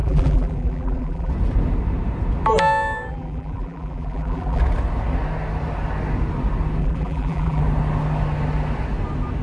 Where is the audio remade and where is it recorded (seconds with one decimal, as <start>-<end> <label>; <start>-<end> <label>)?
0.0-1.3 remade; 1.3-3.1 recorded; 3.1-4.6 remade; 4.6-6.8 recorded; 6.8-7.6 remade; 7.6-9.4 recorded